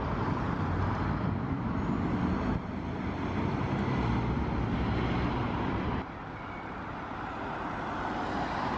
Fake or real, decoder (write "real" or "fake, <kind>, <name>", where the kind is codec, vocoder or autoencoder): real